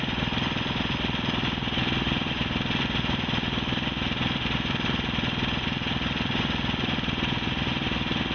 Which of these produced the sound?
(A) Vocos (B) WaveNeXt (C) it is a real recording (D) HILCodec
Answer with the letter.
C